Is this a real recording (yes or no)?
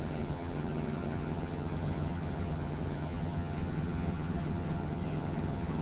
no